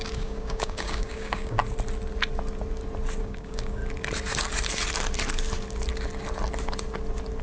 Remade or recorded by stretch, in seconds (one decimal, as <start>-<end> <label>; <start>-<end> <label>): 0.0-1.6 remade; 1.6-3.2 recorded; 3.2-3.8 remade; 3.8-7.4 recorded